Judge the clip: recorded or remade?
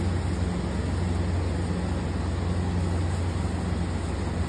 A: recorded